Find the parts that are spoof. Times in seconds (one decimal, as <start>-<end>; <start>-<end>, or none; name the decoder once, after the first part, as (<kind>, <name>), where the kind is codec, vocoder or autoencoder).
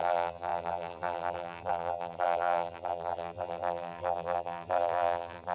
0.0-5.5 (vocoder, BigVGAN v2)